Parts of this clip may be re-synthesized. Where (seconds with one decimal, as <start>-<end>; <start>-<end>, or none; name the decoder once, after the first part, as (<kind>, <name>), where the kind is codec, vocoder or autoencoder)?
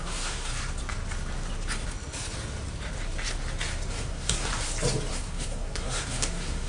0.0-0.5 (codec, SNAC); 3.9-4.5; 5.1-6.7